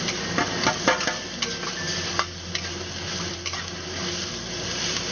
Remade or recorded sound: recorded